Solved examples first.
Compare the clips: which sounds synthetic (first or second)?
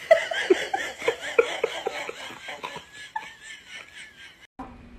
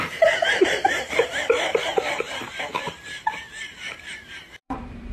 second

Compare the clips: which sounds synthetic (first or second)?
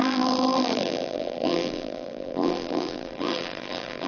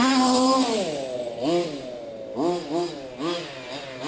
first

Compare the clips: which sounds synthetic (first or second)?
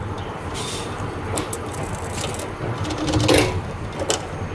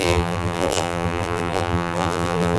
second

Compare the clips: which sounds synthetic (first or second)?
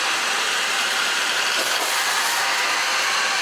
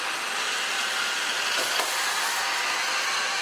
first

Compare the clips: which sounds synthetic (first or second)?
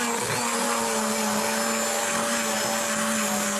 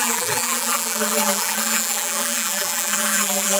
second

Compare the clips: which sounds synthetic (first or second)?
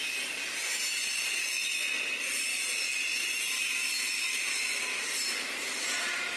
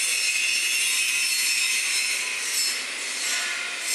first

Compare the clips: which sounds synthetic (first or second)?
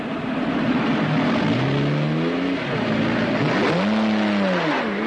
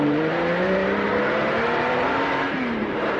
second